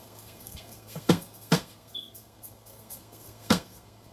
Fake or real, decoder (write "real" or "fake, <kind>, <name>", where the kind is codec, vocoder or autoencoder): fake, codec, SNAC